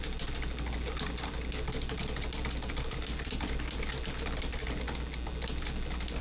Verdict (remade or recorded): recorded